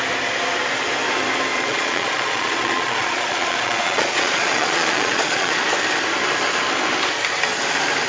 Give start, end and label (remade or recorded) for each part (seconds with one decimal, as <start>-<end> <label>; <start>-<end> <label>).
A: 0.0-1.5 recorded; 1.5-5.6 remade; 5.6-8.1 recorded